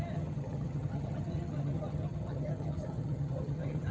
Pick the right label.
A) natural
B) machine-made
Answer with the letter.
B